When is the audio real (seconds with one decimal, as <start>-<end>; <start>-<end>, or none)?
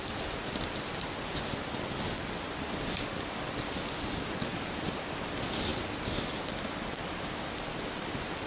0.0-8.5